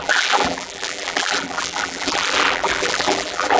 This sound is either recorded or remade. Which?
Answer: remade